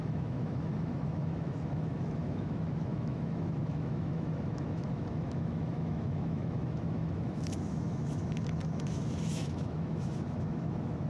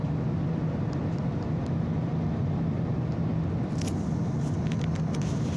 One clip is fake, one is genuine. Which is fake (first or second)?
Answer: first